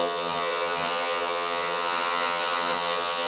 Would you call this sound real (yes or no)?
no